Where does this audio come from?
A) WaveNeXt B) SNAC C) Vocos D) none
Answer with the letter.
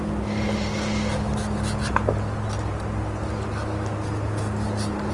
D